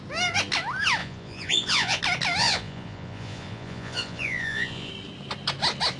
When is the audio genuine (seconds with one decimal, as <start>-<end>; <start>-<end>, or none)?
0.0-1.0; 2.0-2.4; 4.9-6.0